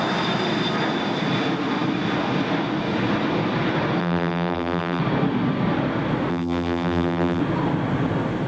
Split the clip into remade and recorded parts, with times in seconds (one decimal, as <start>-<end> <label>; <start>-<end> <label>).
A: 0.0-4.0 recorded; 4.0-5.0 remade; 5.0-6.3 recorded; 6.3-7.4 remade; 7.4-8.5 recorded